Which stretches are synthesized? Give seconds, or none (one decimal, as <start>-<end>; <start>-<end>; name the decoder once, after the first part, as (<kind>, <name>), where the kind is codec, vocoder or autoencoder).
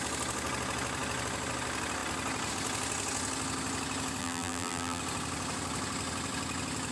4.2-5.0 (vocoder, BigVGAN v2)